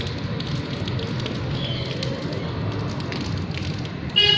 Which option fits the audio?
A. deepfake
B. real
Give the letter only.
B